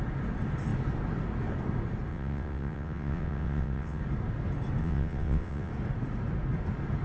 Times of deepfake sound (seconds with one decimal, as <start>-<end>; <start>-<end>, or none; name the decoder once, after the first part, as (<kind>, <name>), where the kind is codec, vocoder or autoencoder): 2.1-4.0 (vocoder, WaveNeXt); 4.8-5.7